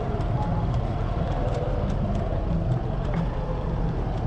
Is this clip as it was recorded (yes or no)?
yes